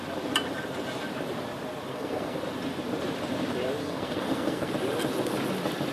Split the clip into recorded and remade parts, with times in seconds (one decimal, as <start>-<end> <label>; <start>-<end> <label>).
0.0-1.9 recorded; 1.9-2.4 remade; 2.4-3.8 recorded; 3.8-4.7 remade; 4.7-5.9 recorded